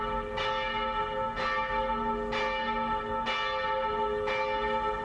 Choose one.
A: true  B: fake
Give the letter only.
A